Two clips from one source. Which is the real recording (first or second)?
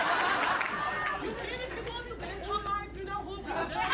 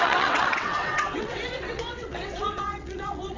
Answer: first